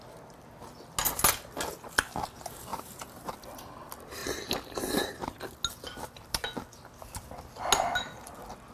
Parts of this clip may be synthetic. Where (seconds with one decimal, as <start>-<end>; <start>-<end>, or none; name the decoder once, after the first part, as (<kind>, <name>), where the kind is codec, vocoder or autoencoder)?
2.7-3.3 (vocoder, BigVGAN v2)